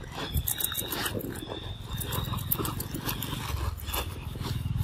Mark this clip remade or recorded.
recorded